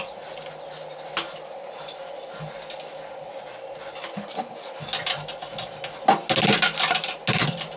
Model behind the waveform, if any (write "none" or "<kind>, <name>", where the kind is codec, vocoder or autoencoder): none